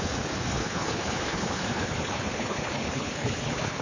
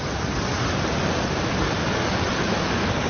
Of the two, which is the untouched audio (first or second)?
second